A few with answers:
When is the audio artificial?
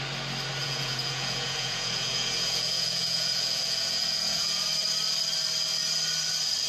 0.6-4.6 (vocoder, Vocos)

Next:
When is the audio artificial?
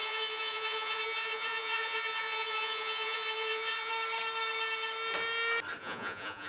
0.0-3.9 (vocoder, Vocos); 5.8-6.5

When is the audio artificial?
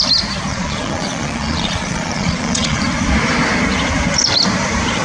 0.5-2.8 (vocoder, Vocos)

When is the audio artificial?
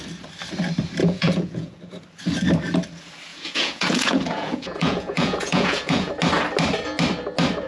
1.0-1.8 (vocoder, Vocos); 3.3-6.1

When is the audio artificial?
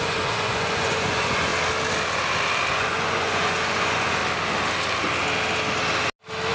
0.0-1.5 (vocoder, Vocos); 2.7-4.2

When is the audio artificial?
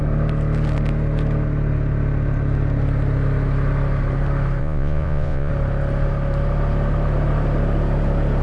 4.6-5.5 (vocoder, Vocos)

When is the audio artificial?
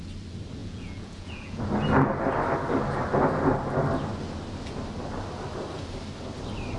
0.6-1.6 (vocoder, Vocos)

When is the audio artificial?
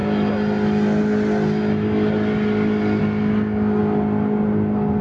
none